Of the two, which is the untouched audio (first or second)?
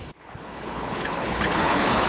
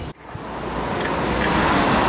second